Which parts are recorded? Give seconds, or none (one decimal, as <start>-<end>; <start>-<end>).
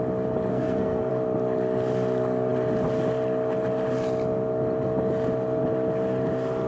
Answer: 0.0-0.5; 1.1-6.7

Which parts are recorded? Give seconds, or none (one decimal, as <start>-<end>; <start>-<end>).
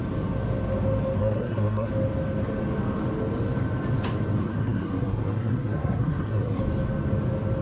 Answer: 0.0-1.2; 1.9-4.4; 6.6-7.6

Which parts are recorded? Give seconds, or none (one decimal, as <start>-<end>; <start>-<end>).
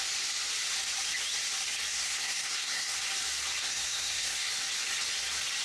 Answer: 0.0-1.9; 3.0-3.6; 4.5-5.6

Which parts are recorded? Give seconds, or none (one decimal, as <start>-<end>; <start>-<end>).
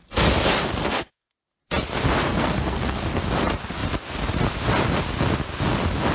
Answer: 0.0-0.7; 1.3-2.3; 3.2-6.1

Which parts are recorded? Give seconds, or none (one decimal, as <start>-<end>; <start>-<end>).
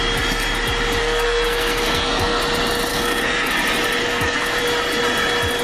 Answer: 0.0-1.0; 2.4-2.9; 3.5-4.0; 4.6-5.6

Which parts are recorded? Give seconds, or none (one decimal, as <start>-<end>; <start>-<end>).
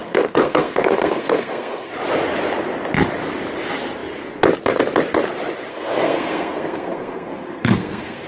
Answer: 1.9-5.7